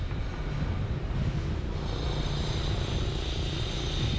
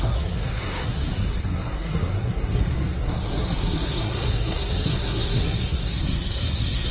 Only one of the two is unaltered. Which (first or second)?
first